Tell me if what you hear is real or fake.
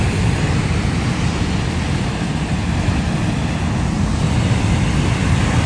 real